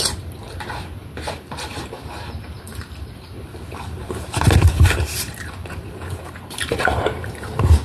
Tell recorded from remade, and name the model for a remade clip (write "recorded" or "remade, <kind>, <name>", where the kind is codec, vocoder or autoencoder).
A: remade, vocoder, BigVGAN v2